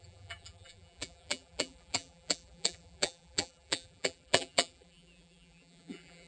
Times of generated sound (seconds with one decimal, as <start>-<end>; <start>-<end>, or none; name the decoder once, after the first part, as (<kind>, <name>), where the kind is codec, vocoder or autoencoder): 0.0-6.3 (vocoder, BigVGAN v2)